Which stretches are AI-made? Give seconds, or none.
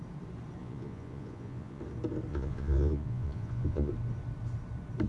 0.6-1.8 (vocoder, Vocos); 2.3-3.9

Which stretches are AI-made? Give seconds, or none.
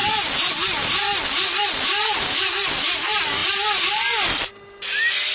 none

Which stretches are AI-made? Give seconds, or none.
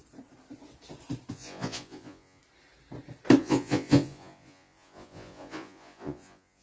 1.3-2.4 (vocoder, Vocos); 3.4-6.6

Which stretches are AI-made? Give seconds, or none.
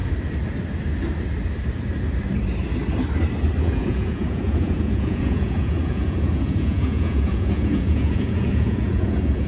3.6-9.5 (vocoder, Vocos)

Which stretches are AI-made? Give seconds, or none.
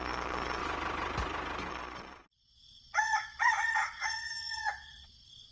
0.0-0.6 (vocoder, Vocos); 1.7-5.5